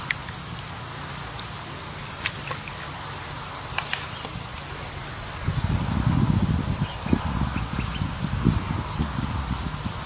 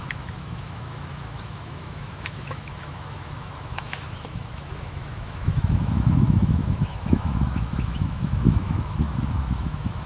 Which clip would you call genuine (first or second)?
first